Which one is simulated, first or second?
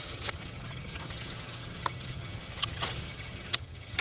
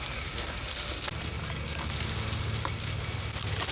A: first